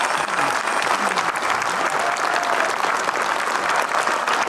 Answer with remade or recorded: recorded